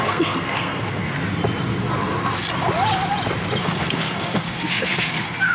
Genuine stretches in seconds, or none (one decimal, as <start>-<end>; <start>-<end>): 1.2-3.6